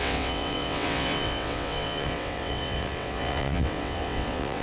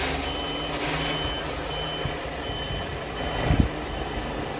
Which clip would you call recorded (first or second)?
second